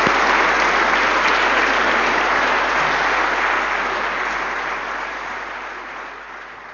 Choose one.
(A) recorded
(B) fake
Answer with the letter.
A